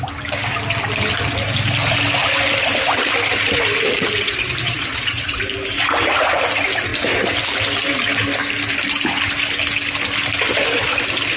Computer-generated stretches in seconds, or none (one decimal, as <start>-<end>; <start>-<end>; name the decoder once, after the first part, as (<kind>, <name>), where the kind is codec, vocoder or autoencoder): 4.6-5.4 (vocoder, Vocos)